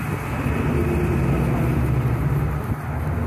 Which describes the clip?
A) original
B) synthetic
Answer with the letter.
A